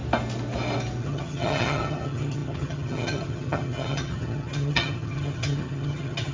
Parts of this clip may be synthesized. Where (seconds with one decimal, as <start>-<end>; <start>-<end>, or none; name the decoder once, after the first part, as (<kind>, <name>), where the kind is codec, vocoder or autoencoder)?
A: 1.0-6.3 (vocoder, HiFi-GAN)